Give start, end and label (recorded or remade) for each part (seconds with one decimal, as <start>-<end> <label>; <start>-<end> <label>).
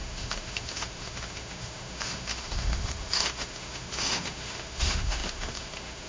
0.0-6.1 remade